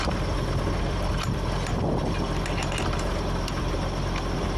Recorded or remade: recorded